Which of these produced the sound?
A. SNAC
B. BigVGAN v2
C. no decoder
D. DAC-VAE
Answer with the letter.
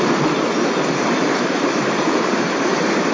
B